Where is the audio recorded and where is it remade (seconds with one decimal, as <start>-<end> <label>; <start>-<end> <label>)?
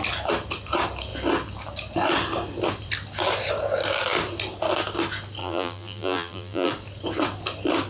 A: 0.0-5.4 recorded; 5.4-6.7 remade; 6.7-7.9 recorded